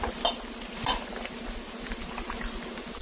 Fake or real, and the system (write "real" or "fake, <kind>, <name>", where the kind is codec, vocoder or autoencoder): real